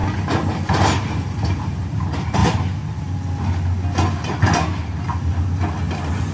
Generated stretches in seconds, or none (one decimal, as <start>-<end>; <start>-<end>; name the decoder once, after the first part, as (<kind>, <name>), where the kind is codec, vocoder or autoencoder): 1.5-2.4 (vocoder, BigVGAN v2)